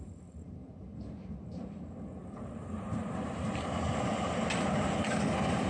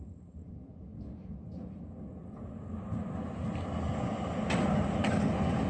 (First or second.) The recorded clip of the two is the second